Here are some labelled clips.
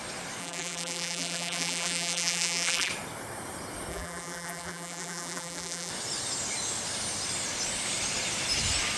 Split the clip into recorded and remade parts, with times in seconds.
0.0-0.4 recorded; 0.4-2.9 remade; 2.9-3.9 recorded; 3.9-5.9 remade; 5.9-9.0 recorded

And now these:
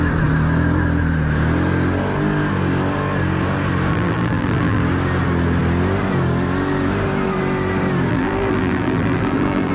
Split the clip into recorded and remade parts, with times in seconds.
0.0-3.9 recorded; 3.9-4.8 remade; 4.8-8.1 recorded; 8.1-9.7 remade